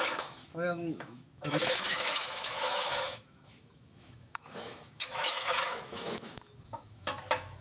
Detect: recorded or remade remade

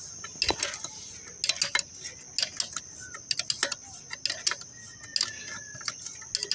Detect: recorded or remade recorded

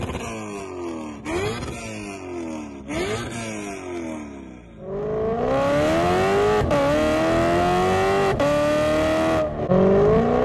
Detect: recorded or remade recorded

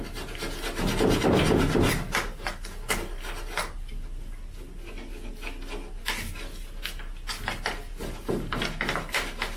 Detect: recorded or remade recorded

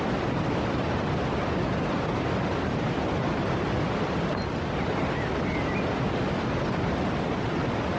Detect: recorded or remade recorded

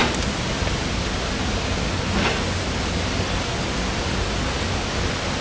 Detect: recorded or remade recorded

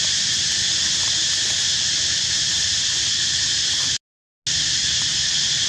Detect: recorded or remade recorded